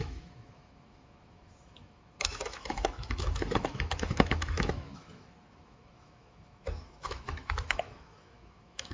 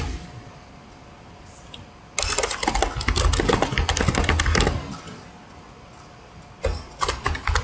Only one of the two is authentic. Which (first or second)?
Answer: second